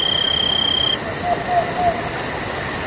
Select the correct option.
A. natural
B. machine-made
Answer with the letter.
A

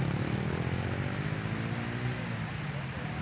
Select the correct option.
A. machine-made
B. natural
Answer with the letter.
B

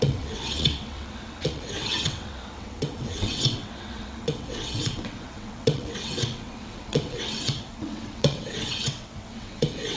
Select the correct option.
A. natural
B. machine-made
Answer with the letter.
B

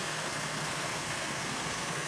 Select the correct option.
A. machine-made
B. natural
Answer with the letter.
A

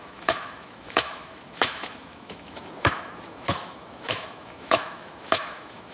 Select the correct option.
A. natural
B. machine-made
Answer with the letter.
B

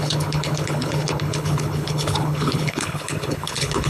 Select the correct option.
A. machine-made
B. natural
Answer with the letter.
A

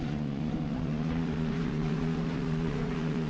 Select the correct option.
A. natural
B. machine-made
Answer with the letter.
B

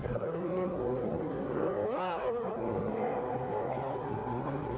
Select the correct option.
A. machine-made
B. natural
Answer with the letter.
A